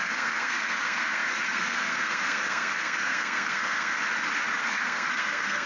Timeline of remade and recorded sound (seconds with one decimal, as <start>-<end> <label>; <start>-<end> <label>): 0.0-4.0 remade; 4.0-4.6 recorded; 4.6-5.7 remade